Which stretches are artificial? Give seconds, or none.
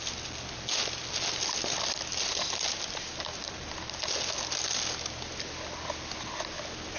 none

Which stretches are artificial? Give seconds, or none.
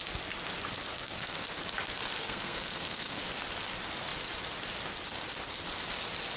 0.9-1.4 (codec, SNAC); 2.2-3.2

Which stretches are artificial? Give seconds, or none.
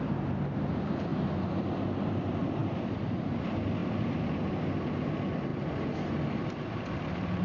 2.6-3.4 (vocoder, BigVGAN v2); 5.5-6.1